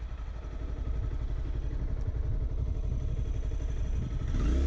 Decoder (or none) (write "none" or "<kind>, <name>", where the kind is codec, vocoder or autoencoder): none